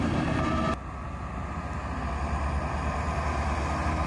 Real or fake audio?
real